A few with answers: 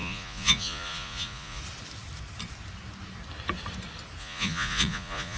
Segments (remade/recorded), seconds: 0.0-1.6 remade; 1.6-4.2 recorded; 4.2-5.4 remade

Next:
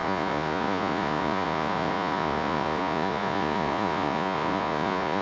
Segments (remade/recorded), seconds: 0.0-5.2 remade

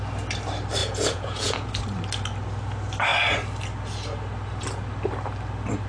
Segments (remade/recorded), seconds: 0.0-0.8 recorded; 0.8-1.7 remade; 1.7-5.9 recorded